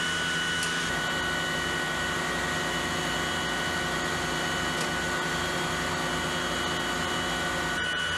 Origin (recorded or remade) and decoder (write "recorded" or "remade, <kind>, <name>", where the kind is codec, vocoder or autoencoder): recorded